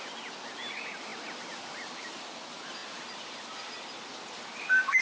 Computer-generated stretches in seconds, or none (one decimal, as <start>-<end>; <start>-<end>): none